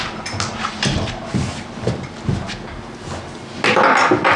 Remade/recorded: recorded